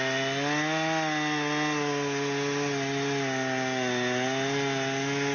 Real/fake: real